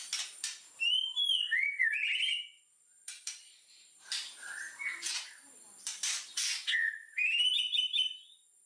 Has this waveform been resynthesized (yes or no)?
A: yes